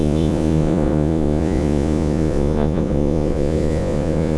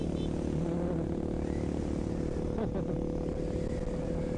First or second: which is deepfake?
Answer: first